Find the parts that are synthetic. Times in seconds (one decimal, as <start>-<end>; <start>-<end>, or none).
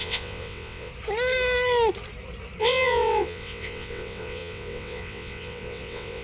0.0-0.9; 2.6-6.2